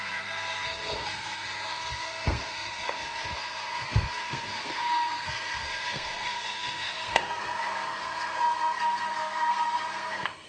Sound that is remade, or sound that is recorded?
remade